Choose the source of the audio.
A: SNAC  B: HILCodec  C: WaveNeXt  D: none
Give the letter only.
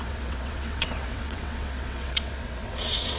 C